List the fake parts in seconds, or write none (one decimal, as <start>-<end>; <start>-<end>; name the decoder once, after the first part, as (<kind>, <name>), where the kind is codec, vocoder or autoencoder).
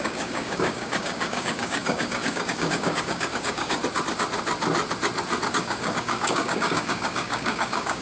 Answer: 0.0-3.8 (codec, DAC); 5.5-8.0